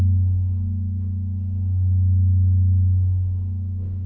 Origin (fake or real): real